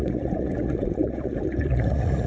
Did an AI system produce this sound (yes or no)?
yes